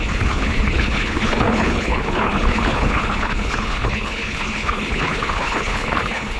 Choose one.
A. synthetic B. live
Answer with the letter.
A